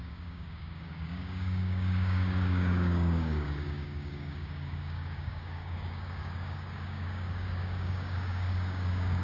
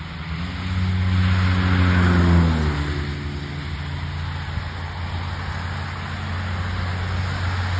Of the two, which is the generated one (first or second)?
first